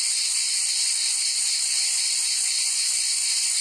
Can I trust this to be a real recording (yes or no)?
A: yes